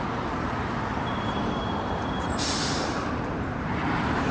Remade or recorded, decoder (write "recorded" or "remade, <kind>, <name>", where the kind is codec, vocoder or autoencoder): remade, vocoder, BigVGAN v2